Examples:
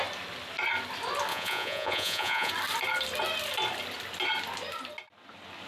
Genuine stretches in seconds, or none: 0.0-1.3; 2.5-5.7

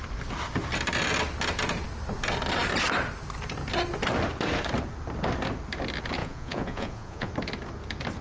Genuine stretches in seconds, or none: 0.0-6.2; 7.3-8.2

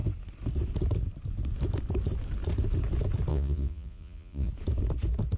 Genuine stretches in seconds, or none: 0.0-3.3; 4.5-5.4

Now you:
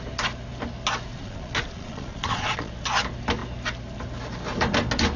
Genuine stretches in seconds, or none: 0.0-1.1; 2.7-5.2

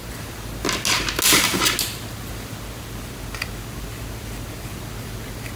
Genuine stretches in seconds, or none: 0.0-5.6

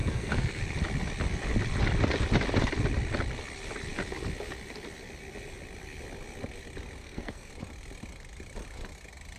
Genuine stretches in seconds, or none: 0.6-7.0; 7.5-9.4

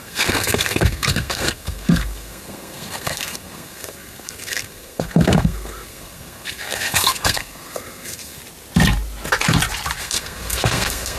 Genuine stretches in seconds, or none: 8.4-10.0

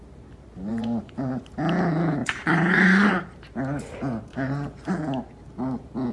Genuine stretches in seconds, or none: 0.0-0.7; 1.4-2.2; 3.1-4.3; 4.9-6.1